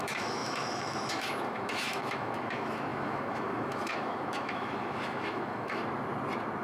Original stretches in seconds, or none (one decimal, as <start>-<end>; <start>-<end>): 5.8-6.6